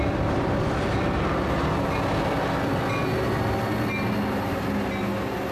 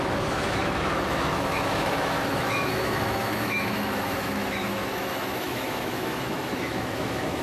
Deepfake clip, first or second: second